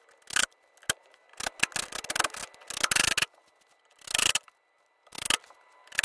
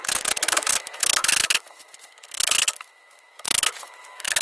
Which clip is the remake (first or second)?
second